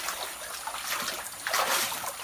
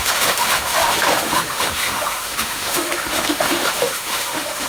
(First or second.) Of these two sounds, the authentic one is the first